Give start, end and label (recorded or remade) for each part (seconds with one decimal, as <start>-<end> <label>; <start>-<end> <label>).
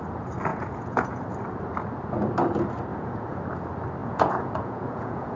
0.0-0.5 recorded; 0.5-1.2 remade; 1.2-2.9 recorded; 2.9-3.4 remade; 3.4-4.0 recorded; 4.0-5.4 remade